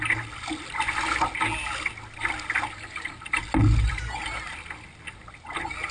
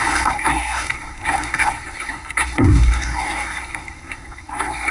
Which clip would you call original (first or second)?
first